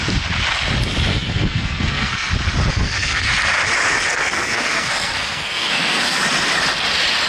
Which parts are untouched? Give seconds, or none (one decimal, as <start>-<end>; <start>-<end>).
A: 0.0-1.1; 2.3-2.7; 3.3-4.1; 6.2-7.3